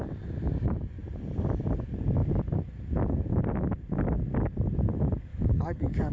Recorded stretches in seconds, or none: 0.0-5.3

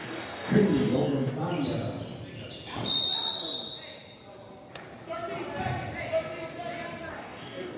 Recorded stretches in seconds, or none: 1.3-7.1

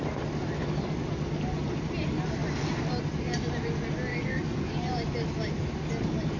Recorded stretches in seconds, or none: 0.0-4.1; 4.7-6.4

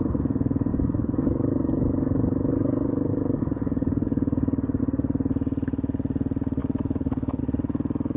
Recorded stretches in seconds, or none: 0.0-0.7; 4.8-6.6; 7.4-8.2

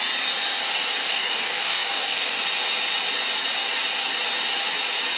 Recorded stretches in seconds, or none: 0.0-1.1; 2.4-5.2

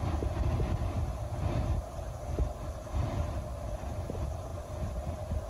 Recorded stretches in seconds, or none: 0.0-5.5